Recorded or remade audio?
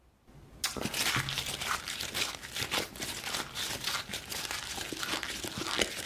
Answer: recorded